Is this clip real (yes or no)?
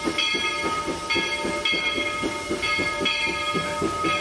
yes